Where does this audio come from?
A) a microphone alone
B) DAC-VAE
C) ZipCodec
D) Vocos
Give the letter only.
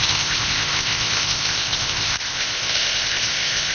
C